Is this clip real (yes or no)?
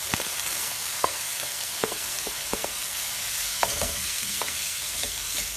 no